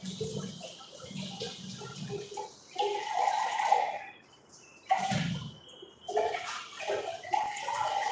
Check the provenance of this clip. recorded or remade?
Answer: recorded